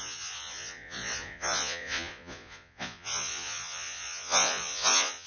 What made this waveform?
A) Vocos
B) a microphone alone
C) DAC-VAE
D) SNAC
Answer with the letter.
A